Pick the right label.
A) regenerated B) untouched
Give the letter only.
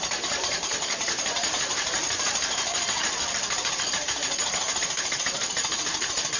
A